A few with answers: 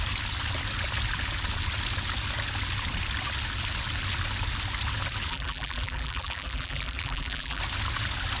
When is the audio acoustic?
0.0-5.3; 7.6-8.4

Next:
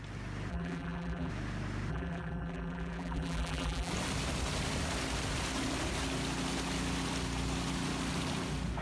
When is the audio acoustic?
0.0-0.5; 1.3-1.9; 3.9-8.8

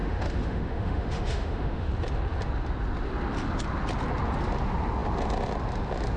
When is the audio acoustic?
1.9-6.2

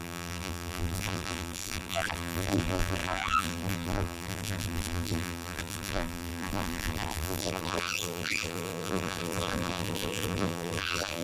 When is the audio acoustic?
none